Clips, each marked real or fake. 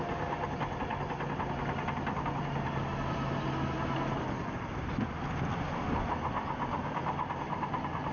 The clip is real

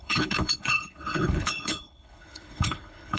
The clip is fake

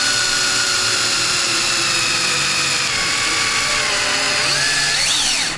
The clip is real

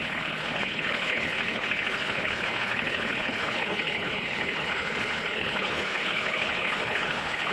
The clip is fake